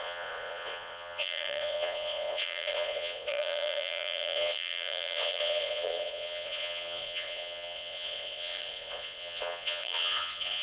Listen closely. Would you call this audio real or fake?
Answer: fake